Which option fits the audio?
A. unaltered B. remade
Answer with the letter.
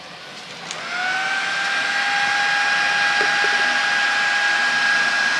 A